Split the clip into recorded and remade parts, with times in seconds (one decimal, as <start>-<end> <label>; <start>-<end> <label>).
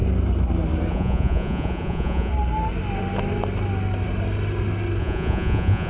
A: 0.0-0.9 recorded; 0.9-2.3 remade; 2.3-5.0 recorded; 5.0-5.9 remade